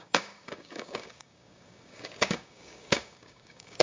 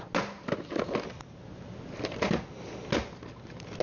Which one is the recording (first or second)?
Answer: second